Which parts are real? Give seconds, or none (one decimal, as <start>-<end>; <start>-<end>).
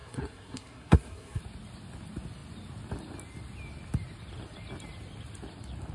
1.4-5.9